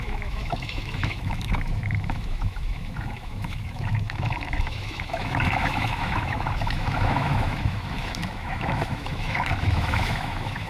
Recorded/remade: remade